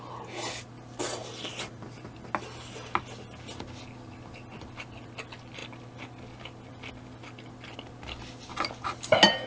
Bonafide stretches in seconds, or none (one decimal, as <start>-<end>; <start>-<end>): 0.0-9.5